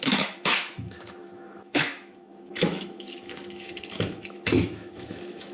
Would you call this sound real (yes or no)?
no